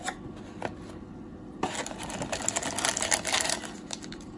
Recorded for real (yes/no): yes